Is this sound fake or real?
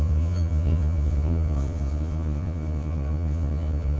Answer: fake